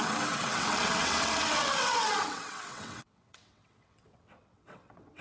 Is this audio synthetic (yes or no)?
yes